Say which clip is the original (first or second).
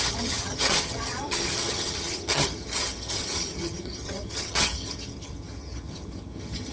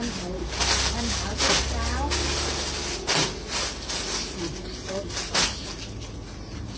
second